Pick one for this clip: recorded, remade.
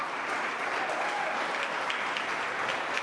recorded